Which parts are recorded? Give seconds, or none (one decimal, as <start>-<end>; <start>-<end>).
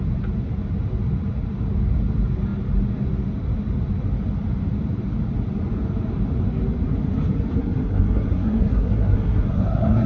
0.0-7.6